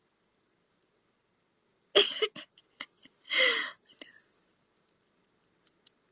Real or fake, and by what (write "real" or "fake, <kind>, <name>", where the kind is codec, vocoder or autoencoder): real